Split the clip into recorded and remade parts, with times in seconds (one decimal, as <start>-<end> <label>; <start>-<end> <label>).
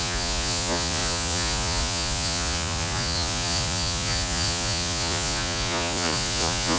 0.0-6.8 remade